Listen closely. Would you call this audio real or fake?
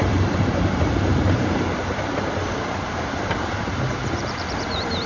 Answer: fake